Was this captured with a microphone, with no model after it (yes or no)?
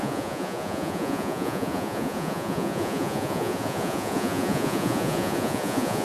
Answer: no